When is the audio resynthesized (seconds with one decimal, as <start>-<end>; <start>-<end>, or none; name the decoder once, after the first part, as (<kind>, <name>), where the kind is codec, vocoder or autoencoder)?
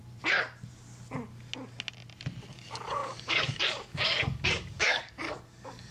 2.5-5.9 (codec, DAC)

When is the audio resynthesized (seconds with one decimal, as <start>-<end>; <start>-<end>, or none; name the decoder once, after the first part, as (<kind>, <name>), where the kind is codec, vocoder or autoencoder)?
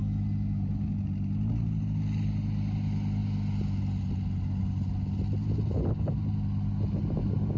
none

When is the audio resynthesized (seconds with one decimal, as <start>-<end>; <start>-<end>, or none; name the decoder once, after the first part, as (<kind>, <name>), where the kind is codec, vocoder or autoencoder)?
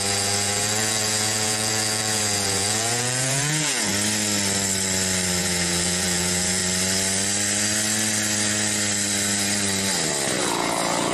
0.0-3.9 (vocoder, Vocos); 5.4-6.6; 10.4-11.1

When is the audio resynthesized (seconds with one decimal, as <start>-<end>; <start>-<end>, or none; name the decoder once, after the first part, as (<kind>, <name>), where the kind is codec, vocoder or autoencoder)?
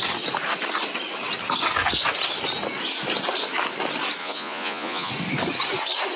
4.2-5.1 (vocoder, Vocos)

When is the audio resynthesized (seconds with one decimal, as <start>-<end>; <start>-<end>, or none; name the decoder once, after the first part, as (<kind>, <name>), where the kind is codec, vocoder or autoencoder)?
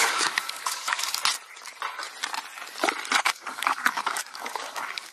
0.0-1.2 (codec, DAC); 3.2-5.1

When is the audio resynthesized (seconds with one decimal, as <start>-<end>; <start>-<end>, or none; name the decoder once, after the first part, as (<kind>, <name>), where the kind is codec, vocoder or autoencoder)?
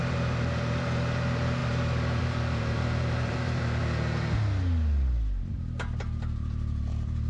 0.0-3.8 (vocoder, BigVGAN v2); 5.5-7.3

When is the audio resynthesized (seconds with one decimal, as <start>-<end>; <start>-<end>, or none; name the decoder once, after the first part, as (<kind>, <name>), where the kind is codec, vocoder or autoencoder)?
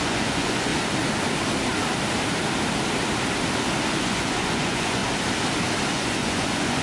0.0-0.7 (vocoder, Vocos); 4.0-5.0; 5.9-6.8